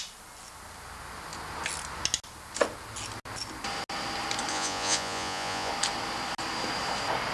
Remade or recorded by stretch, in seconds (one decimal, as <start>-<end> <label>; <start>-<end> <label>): 0.0-4.5 recorded; 4.5-5.7 remade; 5.7-7.3 recorded